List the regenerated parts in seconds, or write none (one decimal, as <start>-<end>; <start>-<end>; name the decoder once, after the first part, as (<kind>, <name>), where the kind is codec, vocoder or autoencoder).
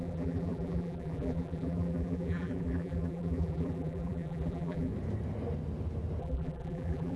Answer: 0.0-4.9 (vocoder, BigVGAN v2); 6.2-7.2